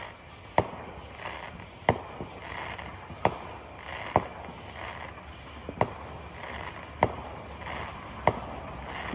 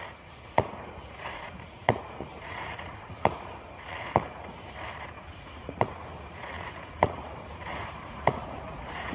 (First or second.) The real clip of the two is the first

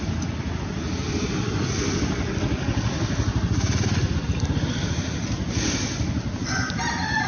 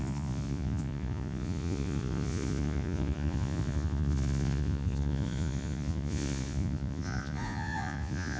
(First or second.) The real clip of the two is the first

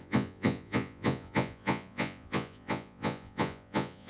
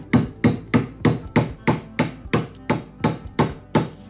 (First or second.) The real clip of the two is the second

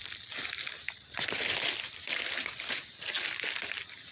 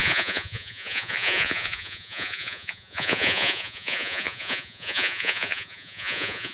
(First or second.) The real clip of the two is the first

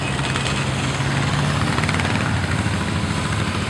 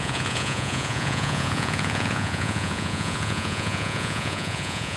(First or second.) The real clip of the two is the first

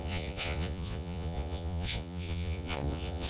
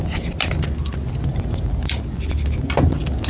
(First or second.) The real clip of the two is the second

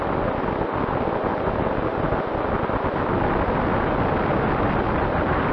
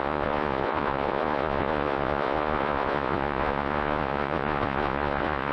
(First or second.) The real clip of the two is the first